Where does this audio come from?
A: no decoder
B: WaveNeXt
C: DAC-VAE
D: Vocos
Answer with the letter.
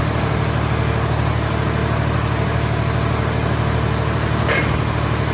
A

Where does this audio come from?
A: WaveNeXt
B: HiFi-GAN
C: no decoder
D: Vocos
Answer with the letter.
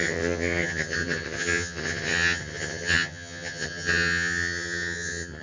B